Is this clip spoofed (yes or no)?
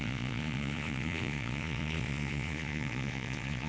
yes